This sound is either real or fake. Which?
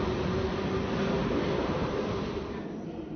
real